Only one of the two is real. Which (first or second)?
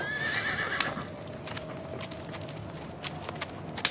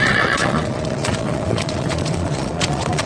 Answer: first